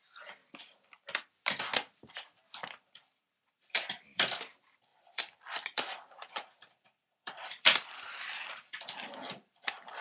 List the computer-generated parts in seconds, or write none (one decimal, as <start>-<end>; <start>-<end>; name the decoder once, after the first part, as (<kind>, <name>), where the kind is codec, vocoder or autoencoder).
0.0-0.4 (vocoder, BigVGAN v2); 2.1-10.0